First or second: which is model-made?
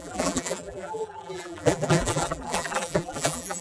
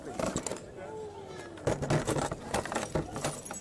first